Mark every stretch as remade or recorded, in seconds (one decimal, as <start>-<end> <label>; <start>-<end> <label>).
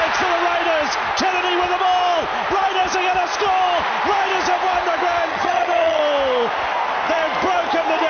0.0-5.3 recorded; 5.3-6.0 remade; 6.0-8.1 recorded